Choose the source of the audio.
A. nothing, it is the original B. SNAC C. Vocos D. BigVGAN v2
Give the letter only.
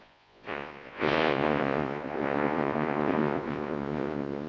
C